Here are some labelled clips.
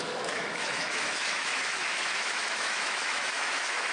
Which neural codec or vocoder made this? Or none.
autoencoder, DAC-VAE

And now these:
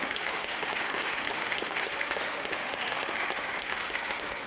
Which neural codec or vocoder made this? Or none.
autoencoder, DAC-VAE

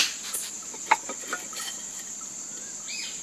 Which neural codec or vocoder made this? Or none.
none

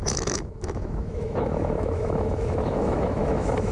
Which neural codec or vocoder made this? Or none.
autoencoder, DAC-VAE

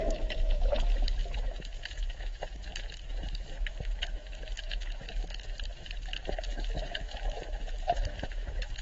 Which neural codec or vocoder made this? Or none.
autoencoder, DAC-VAE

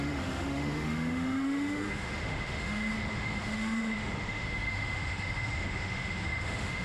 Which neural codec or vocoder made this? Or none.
autoencoder, DAC-VAE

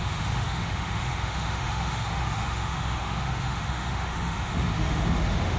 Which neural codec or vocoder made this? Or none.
autoencoder, DAC-VAE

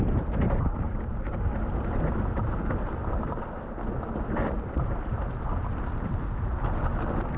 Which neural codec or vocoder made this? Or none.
none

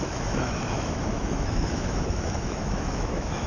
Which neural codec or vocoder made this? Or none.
autoencoder, DAC-VAE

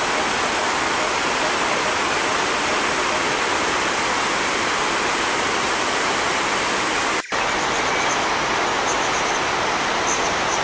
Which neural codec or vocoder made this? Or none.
none